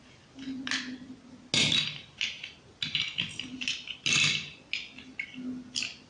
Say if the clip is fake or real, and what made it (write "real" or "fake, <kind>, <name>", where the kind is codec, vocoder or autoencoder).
real